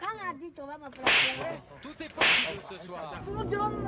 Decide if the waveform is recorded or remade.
recorded